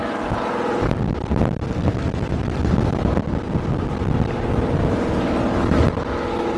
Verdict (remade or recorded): recorded